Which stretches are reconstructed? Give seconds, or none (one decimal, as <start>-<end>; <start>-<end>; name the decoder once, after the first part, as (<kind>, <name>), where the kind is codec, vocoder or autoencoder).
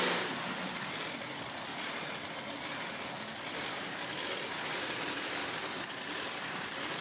0.0-1.7 (vocoder, BigVGAN v2); 4.8-7.0